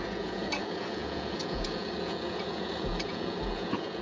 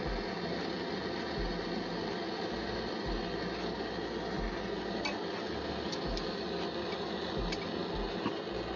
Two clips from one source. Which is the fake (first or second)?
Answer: first